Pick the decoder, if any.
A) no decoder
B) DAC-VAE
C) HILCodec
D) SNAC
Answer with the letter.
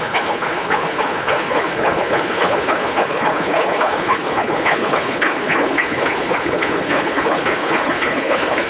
C